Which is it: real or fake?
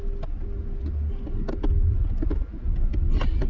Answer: real